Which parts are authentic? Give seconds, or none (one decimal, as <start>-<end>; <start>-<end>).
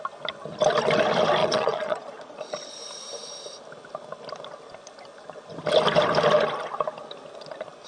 0.0-1.4; 2.7-7.9